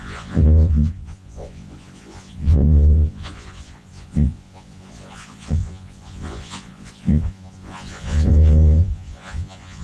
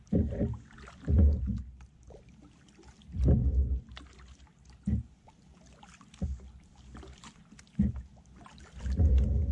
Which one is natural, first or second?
second